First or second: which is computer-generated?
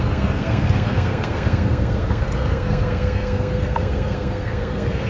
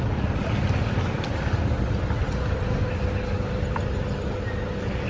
first